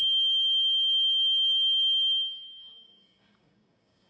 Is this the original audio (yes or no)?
no